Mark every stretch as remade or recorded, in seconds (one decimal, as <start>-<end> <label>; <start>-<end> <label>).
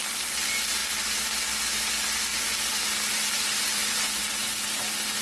0.0-5.2 recorded